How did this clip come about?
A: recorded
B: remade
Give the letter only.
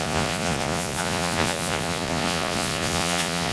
B